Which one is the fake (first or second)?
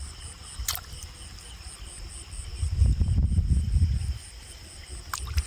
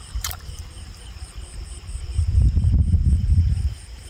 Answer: second